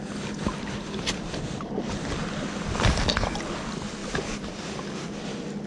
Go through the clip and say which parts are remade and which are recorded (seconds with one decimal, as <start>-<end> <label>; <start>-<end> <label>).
0.0-5.7 recorded